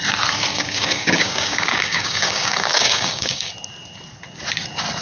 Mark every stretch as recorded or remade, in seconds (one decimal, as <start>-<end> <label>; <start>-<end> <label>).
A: 0.0-0.5 recorded; 0.5-3.5 remade; 3.5-5.0 recorded